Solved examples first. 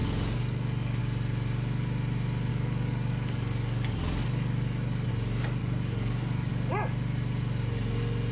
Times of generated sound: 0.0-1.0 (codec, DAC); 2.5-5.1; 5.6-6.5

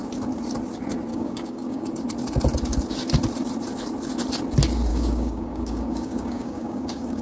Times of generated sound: 1.1-1.9 (codec, DAC); 4.9-7.2

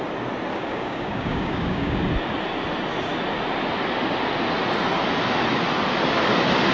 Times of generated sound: 0.5-2.0 (codec, DAC)

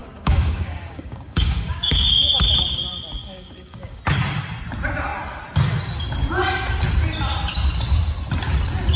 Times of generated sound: 0.0-2.8 (codec, DAC); 3.2-4.0

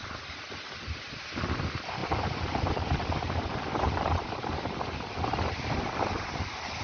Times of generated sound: none

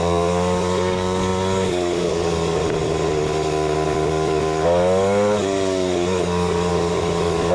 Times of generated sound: 0.0-2.6 (codec, DAC); 4.1-7.5

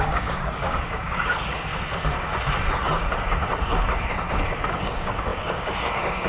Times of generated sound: 0.0-1.7 (codec, DAC); 4.7-6.3

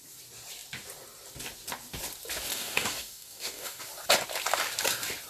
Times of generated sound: 2.5-3.8 (codec, DAC)